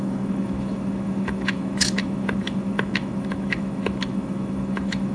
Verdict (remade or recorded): remade